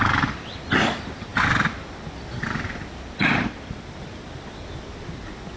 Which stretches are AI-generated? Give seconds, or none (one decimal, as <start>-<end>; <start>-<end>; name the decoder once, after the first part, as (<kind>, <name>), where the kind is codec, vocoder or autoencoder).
none